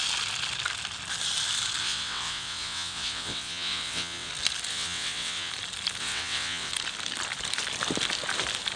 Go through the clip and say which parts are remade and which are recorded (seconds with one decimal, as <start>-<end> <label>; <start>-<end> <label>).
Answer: 0.0-1.8 recorded; 1.8-4.3 remade; 4.3-4.7 recorded; 4.7-5.5 remade; 5.5-6.0 recorded; 6.0-6.7 remade; 6.7-8.8 recorded